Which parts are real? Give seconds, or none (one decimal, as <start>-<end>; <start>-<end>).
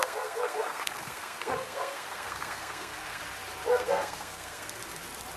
3.2-3.7; 4.8-5.4